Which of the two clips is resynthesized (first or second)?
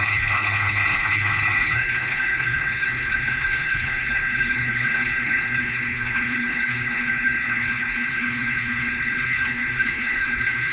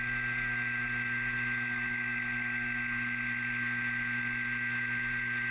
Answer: first